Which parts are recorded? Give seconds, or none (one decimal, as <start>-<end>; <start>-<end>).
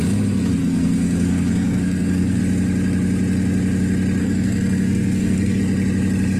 0.0-0.6; 2.4-4.2; 5.6-6.4